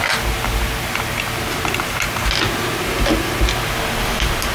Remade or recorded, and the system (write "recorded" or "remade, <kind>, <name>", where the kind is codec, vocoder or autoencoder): recorded